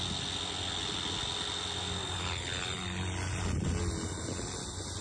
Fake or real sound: real